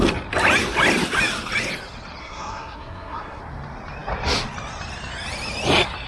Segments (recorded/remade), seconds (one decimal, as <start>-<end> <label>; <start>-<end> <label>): 0.0-2.2 recorded; 2.2-3.4 remade; 3.4-6.1 recorded